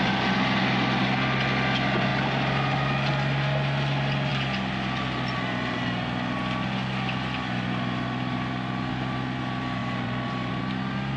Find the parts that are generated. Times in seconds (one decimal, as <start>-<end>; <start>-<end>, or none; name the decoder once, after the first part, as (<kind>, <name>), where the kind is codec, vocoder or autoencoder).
9.8-10.6 (vocoder, BigVGAN v2)